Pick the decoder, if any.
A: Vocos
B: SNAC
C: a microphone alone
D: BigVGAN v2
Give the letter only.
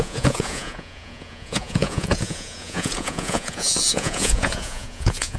A